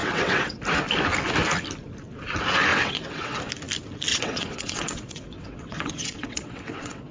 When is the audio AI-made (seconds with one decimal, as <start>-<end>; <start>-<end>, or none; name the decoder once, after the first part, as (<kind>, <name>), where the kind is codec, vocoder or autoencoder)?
0.0-0.6 (vocoder, WaveNeXt); 2.7-3.4; 4.1-7.1

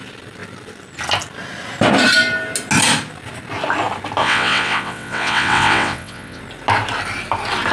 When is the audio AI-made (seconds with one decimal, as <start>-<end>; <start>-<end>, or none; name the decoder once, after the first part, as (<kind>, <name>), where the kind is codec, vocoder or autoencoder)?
4.2-6.4 (vocoder, WaveNeXt)

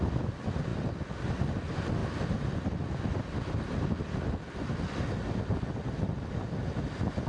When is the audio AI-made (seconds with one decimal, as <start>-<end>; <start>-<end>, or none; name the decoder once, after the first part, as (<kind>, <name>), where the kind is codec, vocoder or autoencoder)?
none

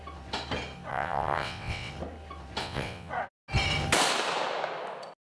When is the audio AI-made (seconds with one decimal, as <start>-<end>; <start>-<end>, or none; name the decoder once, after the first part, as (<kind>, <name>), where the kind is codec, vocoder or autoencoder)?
0.9-1.9 (vocoder, WaveNeXt); 2.6-3.1

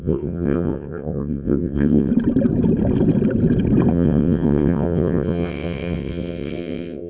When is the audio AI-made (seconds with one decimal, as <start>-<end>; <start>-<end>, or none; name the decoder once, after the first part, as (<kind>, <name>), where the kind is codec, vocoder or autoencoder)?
0.0-2.1 (vocoder, WaveNeXt); 3.9-7.1